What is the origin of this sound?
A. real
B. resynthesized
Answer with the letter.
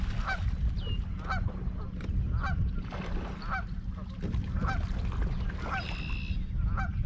A